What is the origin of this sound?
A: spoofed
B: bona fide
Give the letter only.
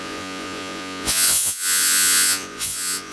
A